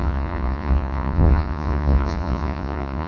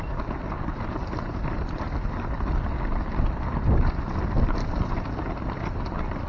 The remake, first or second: first